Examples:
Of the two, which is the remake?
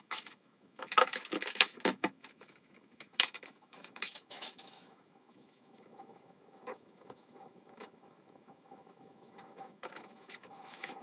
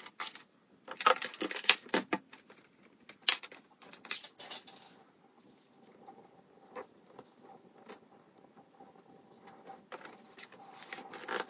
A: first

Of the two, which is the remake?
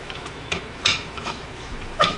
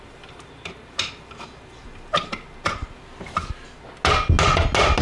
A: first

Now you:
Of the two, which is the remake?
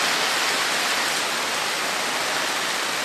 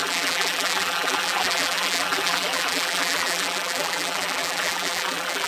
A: second